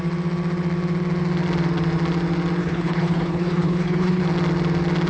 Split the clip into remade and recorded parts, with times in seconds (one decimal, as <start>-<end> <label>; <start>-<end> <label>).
0.0-2.6 recorded; 2.6-4.2 remade; 4.2-5.1 recorded